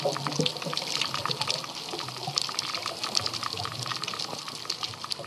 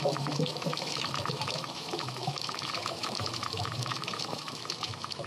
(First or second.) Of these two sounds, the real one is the first